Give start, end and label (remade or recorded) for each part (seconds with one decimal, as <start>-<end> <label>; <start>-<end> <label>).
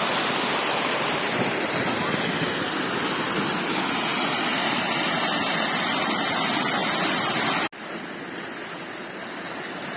0.0-10.0 recorded